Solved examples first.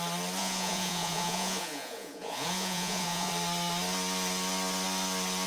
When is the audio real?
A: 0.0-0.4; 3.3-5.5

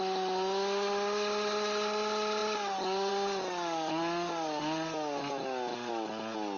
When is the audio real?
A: 0.0-6.6

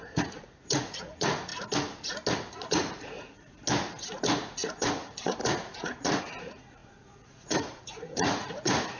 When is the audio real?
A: 1.5-2.5; 3.6-4.3